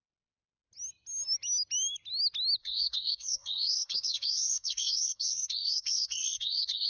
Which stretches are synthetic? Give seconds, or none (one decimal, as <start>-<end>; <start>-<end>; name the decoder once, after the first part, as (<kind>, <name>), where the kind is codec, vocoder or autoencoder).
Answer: 2.6-6.9 (codec, SNAC)